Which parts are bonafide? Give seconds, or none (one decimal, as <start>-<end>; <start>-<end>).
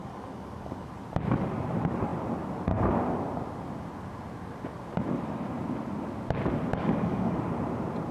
0.9-6.7; 7.4-8.1